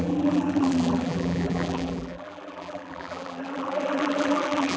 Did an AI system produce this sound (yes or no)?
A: yes